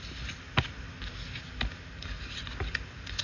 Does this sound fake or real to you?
real